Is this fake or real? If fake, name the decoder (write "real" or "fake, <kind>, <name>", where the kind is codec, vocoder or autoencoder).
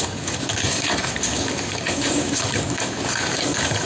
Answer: fake, codec, DAC